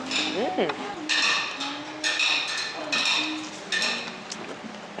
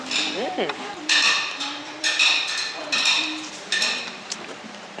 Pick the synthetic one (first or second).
second